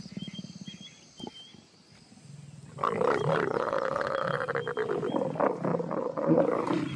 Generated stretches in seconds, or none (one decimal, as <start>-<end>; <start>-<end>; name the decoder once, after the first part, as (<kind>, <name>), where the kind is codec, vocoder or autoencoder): 3.5-4.5 (vocoder, Vocos); 5.7-6.4